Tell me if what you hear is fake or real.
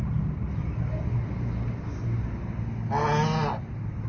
real